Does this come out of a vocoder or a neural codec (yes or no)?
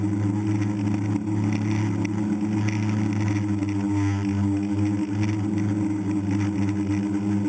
no